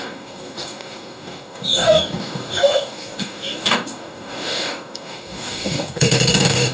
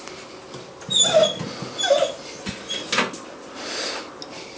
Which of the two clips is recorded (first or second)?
second